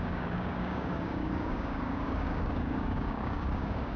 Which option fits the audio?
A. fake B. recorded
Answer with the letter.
A